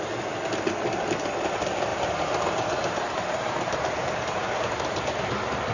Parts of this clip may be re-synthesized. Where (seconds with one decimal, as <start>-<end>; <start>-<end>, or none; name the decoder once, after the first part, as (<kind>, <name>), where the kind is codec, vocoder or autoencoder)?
1.9-5.2 (vocoder, BigVGAN v2)